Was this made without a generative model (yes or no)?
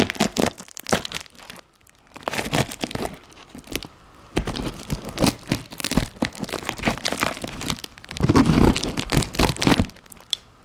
no